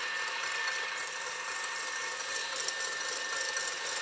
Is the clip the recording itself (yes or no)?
yes